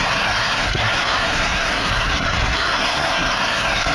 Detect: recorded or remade remade